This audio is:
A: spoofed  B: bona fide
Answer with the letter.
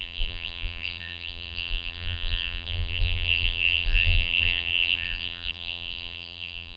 A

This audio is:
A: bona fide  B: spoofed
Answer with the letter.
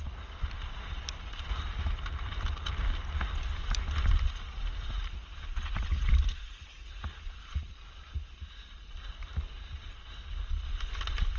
A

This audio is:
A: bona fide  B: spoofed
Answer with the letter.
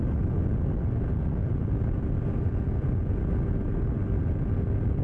A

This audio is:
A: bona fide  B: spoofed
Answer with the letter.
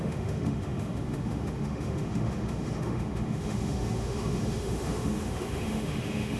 B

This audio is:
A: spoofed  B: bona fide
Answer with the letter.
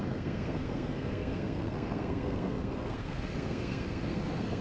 A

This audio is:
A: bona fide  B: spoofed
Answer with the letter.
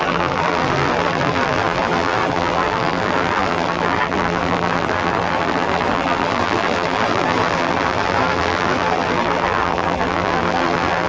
B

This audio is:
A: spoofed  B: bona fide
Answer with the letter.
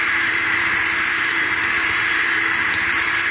A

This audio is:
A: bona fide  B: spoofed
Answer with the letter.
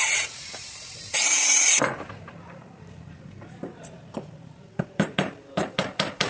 B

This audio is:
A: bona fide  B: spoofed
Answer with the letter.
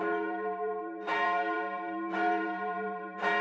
B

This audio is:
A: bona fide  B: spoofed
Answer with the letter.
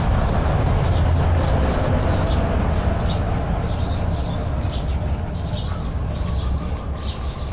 A